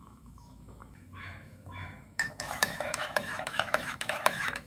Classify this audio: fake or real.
fake